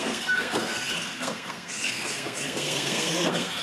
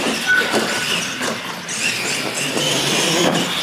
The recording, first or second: second